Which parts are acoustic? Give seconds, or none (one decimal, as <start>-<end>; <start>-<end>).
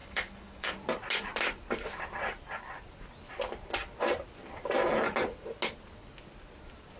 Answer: 0.7-7.0